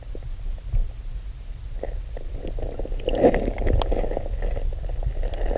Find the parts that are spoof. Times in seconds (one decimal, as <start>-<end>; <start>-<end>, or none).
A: none